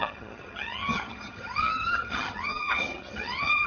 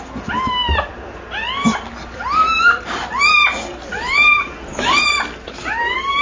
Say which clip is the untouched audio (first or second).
second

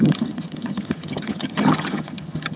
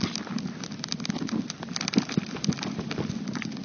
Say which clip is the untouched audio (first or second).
second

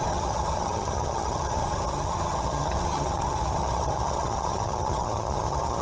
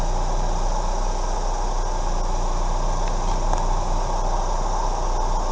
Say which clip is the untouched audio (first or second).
second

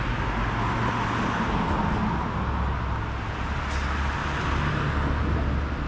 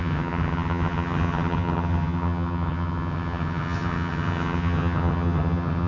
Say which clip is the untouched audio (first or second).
first